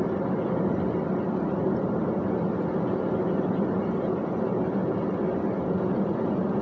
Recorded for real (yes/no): yes